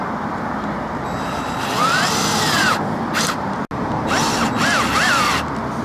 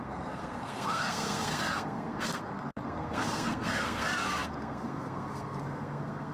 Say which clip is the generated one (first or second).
second